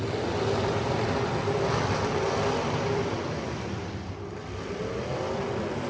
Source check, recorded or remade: remade